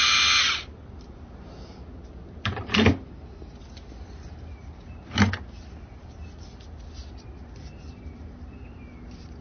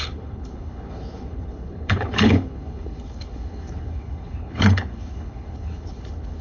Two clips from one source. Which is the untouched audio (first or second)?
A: first